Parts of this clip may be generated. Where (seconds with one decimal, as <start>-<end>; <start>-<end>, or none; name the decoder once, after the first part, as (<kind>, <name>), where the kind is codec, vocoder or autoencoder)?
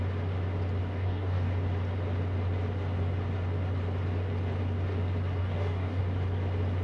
0.8-1.5 (codec, DAC); 5.4-6.0